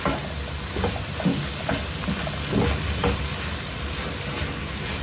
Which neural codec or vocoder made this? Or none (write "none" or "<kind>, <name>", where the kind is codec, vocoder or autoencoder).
none